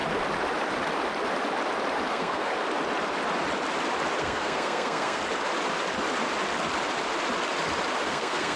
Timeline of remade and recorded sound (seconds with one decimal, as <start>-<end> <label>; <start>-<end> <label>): 0.0-2.1 recorded; 2.1-2.5 remade; 2.5-4.2 recorded; 4.2-5.2 remade; 5.2-8.1 recorded; 8.1-8.6 remade